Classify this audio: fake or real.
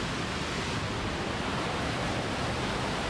real